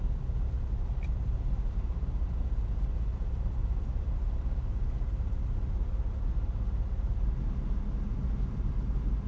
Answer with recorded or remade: recorded